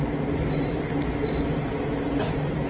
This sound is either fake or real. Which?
real